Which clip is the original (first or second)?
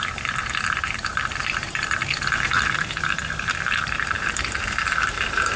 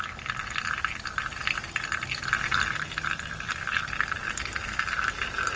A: second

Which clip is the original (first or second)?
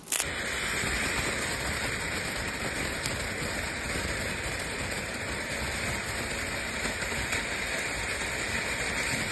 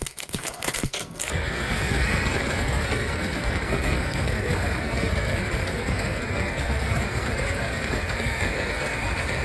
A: first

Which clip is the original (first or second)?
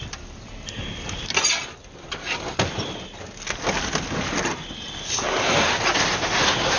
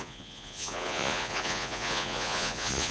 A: first